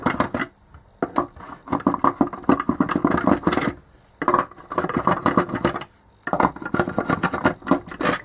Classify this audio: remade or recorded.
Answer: recorded